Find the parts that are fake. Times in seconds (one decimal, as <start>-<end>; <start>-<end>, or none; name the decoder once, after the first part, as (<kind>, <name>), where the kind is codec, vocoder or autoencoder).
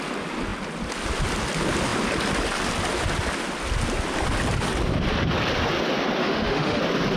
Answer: 6.2-6.8 (autoencoder, DAC-VAE)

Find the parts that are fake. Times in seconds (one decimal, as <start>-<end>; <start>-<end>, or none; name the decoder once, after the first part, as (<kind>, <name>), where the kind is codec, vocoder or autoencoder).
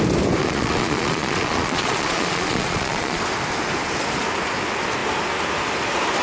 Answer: 0.4-3.2 (vocoder, Vocos)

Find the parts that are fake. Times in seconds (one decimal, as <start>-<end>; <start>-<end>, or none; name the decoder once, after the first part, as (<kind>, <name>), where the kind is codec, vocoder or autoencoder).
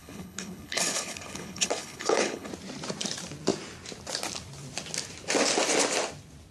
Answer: 0.0-2.5 (codec, HILCodec)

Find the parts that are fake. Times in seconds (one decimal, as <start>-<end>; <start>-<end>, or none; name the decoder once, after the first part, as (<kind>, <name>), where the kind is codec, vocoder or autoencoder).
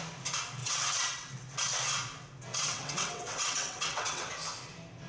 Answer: 0.6-1.3 (vocoder, WaveNeXt); 2.5-4.3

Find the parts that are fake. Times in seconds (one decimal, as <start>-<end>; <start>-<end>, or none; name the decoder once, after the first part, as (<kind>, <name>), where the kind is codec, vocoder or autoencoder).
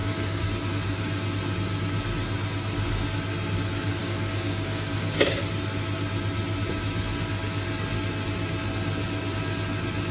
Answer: 0.0-0.5 (codec, DAC); 4.0-5.4